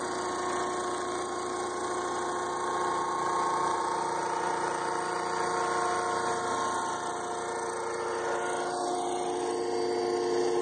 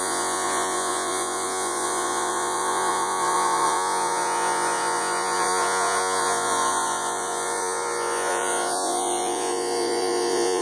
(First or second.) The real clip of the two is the first